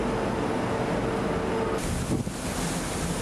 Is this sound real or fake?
real